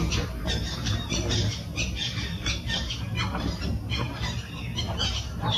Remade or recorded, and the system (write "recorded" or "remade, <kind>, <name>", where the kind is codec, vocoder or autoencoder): remade, vocoder, BigVGAN v2